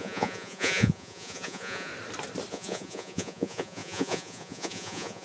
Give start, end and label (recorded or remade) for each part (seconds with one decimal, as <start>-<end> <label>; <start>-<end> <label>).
0.0-1.9 remade; 1.9-2.5 recorded; 2.5-5.2 remade